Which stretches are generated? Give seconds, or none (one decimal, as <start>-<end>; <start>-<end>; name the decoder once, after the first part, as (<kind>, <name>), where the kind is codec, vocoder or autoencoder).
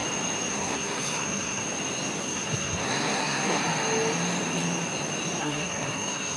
0.5-1.6 (codec, SNAC); 2.2-3.6; 5.4-6.4